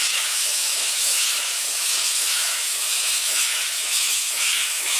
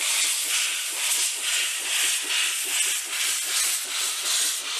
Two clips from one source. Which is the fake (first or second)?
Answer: first